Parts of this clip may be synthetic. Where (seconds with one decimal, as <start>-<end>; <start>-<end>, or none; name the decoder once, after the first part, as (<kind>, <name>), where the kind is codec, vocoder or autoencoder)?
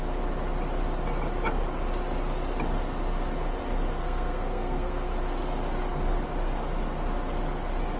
4.0-5.1 (codec, SNAC)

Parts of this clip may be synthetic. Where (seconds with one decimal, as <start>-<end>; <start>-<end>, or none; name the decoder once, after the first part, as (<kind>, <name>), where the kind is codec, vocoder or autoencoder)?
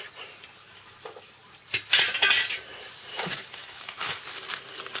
0.6-1.3 (autoencoder, DAC-VAE); 3.1-4.2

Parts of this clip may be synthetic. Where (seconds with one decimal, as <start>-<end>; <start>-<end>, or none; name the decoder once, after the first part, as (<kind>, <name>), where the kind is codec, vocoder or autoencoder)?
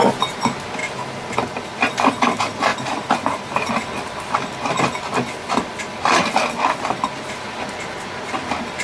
2.7-3.7 (vocoder, BigVGAN v2)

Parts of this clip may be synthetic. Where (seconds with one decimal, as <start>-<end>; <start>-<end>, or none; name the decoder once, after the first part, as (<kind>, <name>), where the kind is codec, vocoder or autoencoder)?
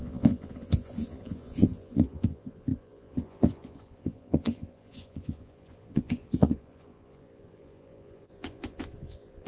0.0-9.5 (vocoder, Vocos)